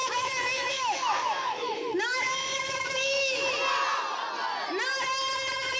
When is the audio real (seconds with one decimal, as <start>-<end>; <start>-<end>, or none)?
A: 3.5-5.8